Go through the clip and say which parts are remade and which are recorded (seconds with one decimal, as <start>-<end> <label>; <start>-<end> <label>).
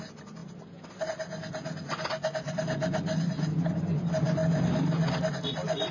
0.0-5.9 recorded